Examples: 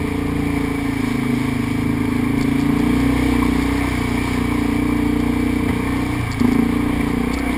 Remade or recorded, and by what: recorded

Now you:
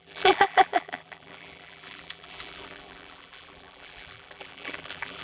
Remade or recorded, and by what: remade, vocoder, BigVGAN v2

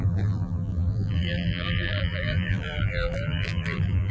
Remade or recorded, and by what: remade, vocoder, BigVGAN v2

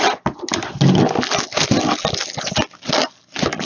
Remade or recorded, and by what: recorded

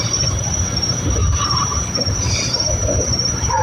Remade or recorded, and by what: remade, vocoder, BigVGAN v2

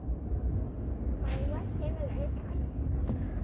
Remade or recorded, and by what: recorded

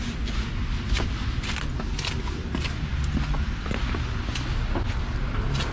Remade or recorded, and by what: recorded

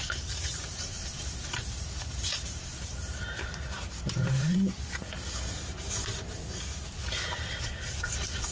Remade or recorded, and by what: remade, vocoder, BigVGAN v2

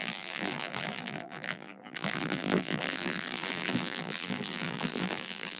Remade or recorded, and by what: remade, vocoder, BigVGAN v2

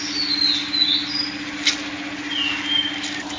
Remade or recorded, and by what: recorded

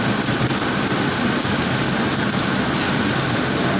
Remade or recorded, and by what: recorded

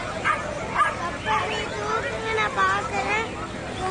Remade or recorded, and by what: recorded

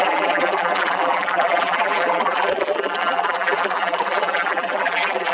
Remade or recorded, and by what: remade, vocoder, BigVGAN v2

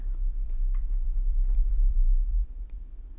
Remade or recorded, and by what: remade, vocoder, BigVGAN v2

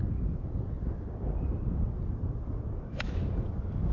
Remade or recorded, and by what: recorded